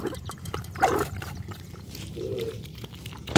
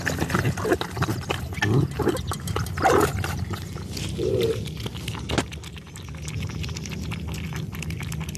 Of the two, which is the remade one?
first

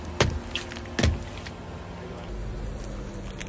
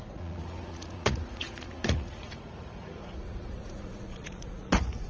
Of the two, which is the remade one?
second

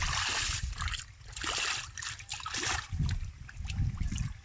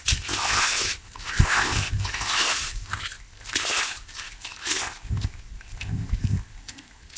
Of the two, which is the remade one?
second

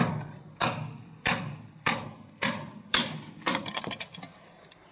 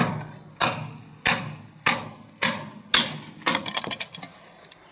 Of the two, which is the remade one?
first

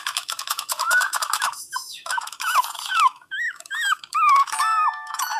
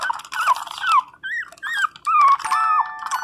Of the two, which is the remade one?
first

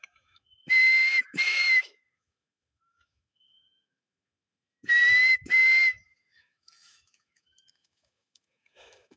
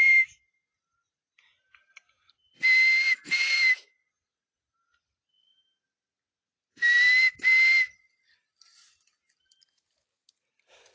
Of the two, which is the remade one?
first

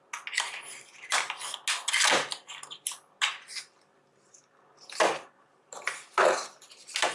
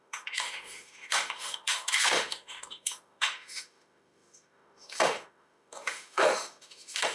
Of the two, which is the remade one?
second